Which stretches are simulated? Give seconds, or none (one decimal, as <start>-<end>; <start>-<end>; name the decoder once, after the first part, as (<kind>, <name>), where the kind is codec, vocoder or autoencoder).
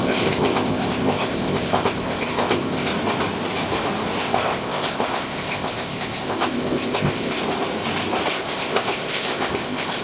0.0-2.9 (codec, ZipCodec); 4.2-7.4; 8.3-10.0